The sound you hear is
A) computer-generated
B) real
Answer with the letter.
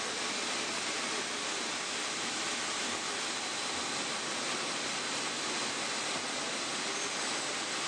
B